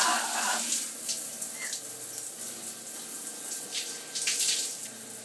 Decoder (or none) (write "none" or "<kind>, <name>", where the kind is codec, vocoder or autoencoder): none